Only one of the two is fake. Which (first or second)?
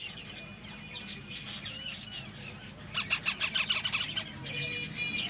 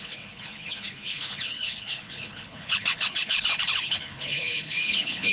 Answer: second